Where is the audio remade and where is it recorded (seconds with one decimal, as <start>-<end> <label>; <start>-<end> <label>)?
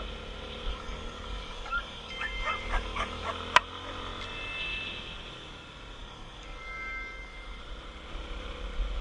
0.0-0.7 recorded; 0.7-3.3 remade; 3.3-6.0 recorded; 6.0-7.6 remade; 7.6-9.0 recorded